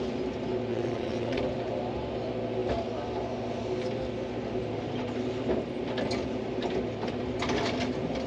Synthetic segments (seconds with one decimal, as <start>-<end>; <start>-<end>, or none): 0.7-1.4